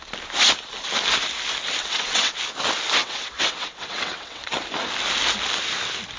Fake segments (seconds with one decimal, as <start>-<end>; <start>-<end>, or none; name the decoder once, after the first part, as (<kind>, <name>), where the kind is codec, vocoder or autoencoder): 1.8-2.3 (vocoder, WaveNeXt); 3.0-4.6